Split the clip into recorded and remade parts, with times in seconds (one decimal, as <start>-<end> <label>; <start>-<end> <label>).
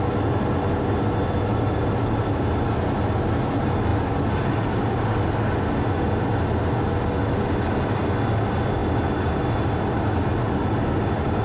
0.0-11.4 recorded